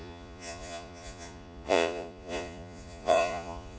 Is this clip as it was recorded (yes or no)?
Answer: no